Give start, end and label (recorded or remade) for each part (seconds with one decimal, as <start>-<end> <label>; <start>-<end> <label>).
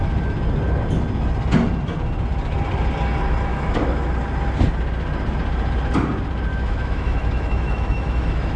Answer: 0.0-3.5 recorded; 3.5-4.1 remade; 4.1-6.5 recorded; 6.5-8.6 remade